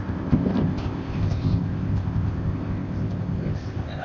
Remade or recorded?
remade